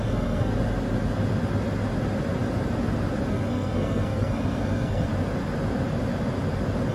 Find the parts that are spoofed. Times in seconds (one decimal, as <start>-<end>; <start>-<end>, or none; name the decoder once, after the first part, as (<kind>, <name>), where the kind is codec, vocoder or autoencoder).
0.0-0.5 (codec, SNAC); 3.3-5.1